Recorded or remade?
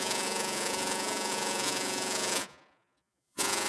remade